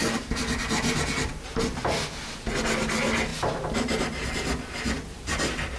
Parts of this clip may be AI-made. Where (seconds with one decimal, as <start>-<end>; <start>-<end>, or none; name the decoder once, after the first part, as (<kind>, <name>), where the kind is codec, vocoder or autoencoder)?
none